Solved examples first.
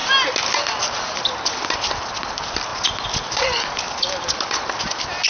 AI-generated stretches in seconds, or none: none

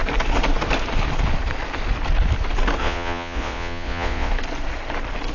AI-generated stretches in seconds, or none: 2.8-4.3 (vocoder, Vocos)

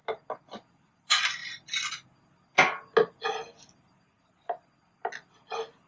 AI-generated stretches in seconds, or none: none

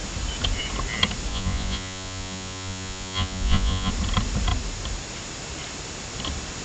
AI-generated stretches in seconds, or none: 1.3-3.9 (vocoder, Vocos)

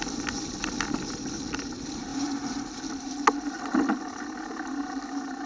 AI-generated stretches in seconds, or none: none

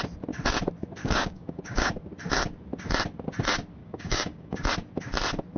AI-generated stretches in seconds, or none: 1.0-1.9 (codec, DAC); 3.8-4.6

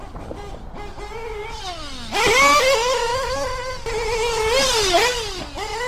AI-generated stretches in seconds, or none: none

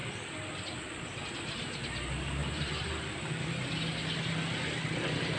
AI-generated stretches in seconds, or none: 0.0-0.8 (vocoder, BigVGAN v2); 2.4-3.5